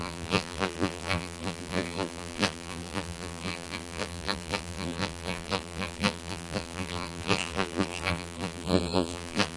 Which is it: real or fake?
fake